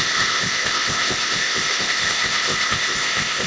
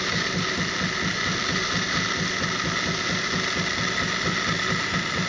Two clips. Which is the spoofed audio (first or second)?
first